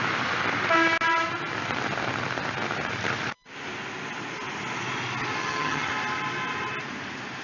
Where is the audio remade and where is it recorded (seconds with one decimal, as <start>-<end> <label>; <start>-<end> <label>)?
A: 0.0-5.4 recorded; 5.4-5.9 remade; 5.9-7.4 recorded